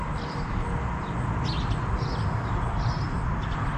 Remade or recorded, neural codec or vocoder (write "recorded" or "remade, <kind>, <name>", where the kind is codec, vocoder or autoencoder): recorded